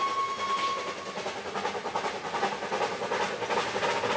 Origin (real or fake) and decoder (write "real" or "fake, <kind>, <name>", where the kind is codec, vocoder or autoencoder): real